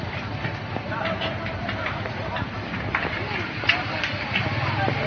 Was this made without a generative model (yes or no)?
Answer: yes